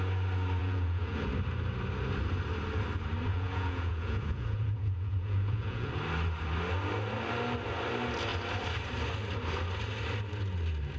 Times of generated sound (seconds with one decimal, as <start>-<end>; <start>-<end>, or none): 0.6-1.3; 3.3-5.9